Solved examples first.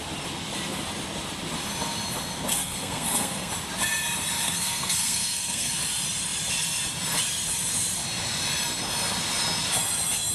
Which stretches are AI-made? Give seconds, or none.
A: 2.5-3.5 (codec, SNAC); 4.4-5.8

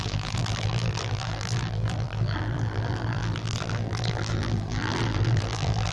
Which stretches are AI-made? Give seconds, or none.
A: 0.0-5.9 (vocoder, BigVGAN v2)

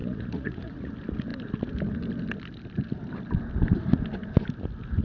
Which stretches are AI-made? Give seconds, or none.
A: 0.0-0.9 (vocoder, Vocos)

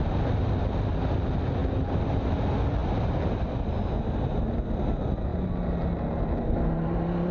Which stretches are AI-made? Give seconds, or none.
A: none

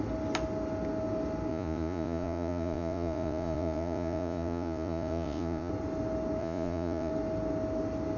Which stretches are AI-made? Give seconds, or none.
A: 1.5-5.7 (vocoder, Vocos); 6.4-7.1